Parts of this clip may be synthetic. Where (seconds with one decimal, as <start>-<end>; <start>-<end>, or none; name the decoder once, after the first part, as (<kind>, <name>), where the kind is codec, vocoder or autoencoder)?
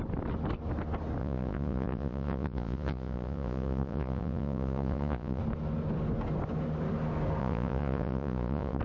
1.2-5.4 (vocoder, Vocos); 7.4-8.8